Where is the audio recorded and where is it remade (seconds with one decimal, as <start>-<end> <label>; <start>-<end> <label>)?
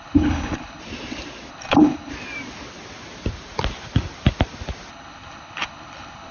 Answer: 0.0-0.8 remade; 0.8-1.5 recorded; 1.5-2.1 remade; 2.1-4.9 recorded; 4.9-6.3 remade